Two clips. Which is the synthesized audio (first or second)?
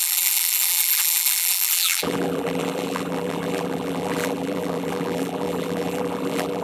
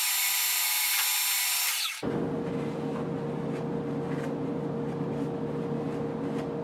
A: first